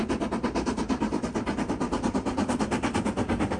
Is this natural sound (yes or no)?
yes